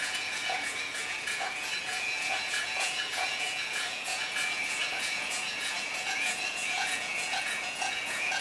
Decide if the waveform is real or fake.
fake